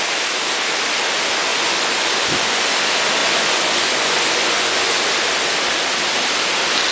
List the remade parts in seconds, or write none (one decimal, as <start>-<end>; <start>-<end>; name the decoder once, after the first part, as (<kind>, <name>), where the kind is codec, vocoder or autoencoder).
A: 1.5-2.6 (vocoder, Vocos); 3.2-5.0